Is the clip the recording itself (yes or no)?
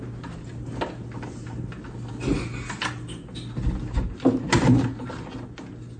yes